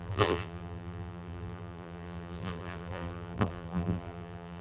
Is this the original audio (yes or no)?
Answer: no